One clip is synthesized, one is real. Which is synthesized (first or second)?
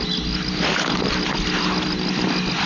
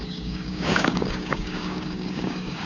second